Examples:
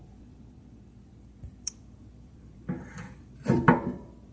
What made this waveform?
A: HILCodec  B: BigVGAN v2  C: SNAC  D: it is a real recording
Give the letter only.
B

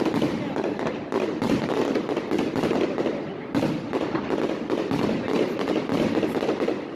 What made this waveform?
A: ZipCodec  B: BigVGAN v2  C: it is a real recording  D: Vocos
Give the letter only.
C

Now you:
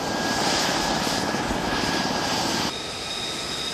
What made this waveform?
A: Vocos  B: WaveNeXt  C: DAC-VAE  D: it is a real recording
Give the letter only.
D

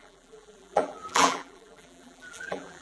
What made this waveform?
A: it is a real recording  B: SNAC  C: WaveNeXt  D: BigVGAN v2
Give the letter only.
D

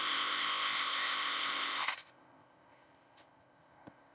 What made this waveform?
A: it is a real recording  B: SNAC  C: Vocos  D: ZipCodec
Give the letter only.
D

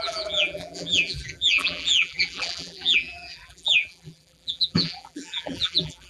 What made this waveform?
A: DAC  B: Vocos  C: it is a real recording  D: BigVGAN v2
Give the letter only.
D